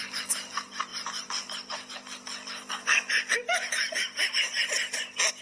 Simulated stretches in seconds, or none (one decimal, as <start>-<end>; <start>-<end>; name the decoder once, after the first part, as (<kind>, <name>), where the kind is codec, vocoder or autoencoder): 0.9-3.7 (vocoder, BigVGAN v2)